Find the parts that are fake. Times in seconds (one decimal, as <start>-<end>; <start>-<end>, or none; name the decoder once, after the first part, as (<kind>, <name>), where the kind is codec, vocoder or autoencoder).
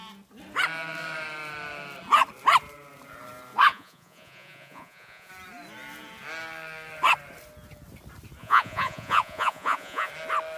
3.7-5.3 (vocoder, Vocos); 8.4-10.1